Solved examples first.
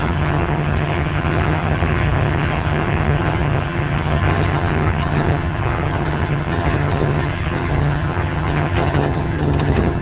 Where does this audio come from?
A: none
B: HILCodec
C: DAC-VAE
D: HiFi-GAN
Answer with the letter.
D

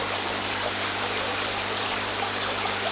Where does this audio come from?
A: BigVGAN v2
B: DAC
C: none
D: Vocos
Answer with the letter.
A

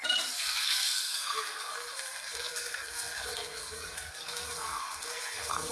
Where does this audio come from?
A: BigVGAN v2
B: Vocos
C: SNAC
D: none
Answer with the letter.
C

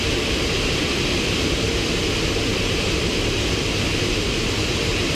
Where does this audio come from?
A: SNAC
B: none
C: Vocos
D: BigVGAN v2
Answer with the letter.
D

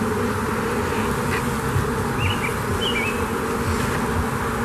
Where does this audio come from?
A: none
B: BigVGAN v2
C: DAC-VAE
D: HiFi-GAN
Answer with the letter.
A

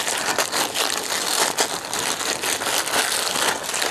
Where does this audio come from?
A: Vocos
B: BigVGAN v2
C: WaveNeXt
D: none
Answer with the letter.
D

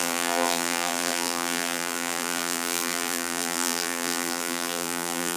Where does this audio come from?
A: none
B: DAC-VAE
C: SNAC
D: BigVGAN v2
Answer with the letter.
D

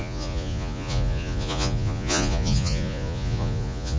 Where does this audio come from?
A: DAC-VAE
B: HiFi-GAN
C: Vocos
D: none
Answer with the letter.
C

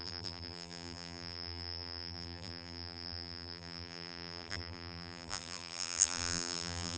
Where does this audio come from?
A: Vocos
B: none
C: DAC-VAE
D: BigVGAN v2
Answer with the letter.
D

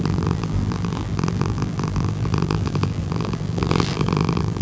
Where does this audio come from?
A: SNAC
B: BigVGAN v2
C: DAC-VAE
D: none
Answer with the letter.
B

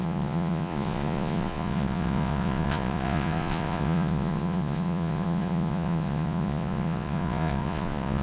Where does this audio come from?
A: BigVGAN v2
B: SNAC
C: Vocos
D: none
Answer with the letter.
C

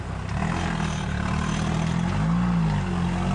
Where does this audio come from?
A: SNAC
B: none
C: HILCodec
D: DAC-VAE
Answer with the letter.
B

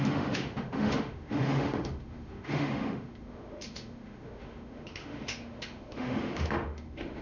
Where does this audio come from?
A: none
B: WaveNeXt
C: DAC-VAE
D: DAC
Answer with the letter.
C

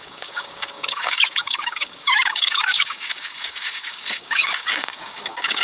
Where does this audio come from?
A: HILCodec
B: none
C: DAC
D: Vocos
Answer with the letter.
C